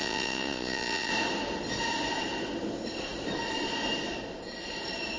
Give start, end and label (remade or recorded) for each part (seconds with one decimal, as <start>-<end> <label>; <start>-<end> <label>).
0.0-1.1 remade; 1.1-5.2 recorded